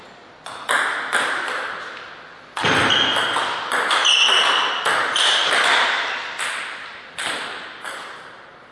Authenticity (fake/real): real